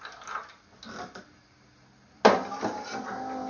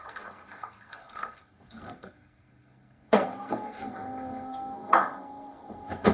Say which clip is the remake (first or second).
second